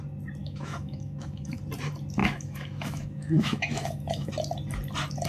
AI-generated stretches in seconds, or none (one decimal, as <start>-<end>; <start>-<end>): 0.4-1.6; 2.2-4.3